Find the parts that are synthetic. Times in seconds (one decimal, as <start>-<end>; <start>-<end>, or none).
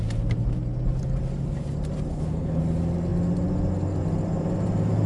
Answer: 2.1-2.6